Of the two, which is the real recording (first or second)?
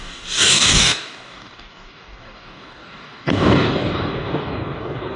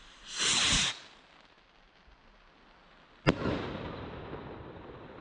second